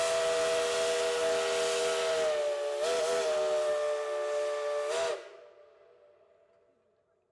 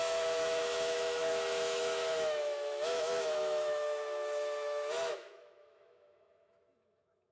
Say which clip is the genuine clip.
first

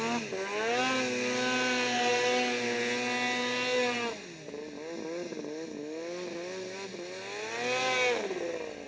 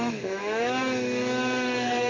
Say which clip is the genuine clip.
first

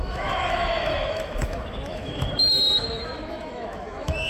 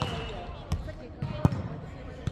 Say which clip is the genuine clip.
second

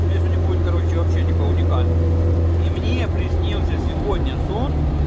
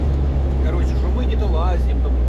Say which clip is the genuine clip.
first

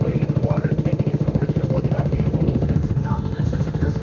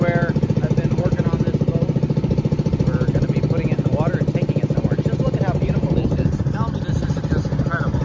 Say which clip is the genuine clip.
second